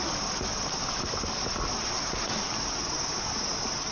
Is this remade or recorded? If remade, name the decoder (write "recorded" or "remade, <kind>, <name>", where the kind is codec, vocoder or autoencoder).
recorded